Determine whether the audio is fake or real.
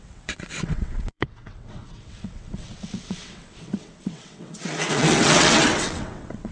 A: fake